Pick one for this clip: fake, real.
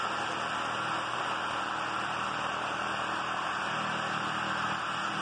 real